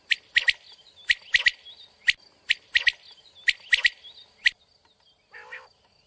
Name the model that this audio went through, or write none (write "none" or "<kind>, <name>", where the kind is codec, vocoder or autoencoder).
none